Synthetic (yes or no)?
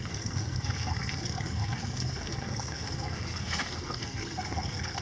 yes